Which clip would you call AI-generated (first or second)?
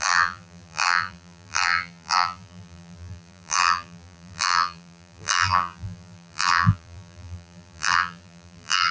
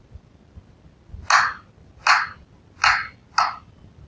first